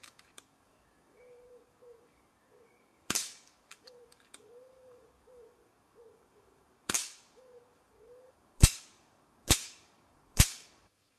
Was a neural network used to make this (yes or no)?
yes